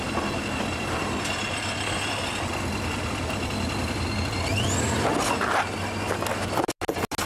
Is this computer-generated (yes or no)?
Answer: no